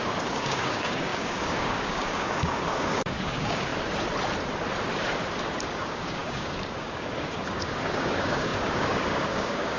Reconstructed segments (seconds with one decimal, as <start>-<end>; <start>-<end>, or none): 0.0-3.7; 5.7-9.8